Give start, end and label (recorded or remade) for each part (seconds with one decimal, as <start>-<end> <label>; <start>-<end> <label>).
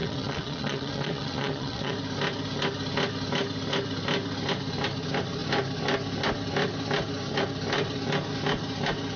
0.0-1.9 remade; 1.9-9.2 recorded